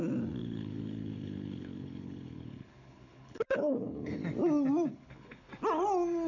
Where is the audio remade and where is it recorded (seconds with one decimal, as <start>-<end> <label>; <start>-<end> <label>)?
0.0-0.4 recorded; 0.4-4.2 remade; 4.2-4.9 recorded; 4.9-5.5 remade; 5.5-6.3 recorded